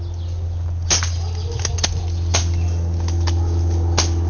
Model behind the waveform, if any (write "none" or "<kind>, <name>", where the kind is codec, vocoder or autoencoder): none